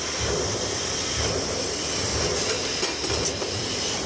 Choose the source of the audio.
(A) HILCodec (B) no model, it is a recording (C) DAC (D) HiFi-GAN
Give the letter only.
B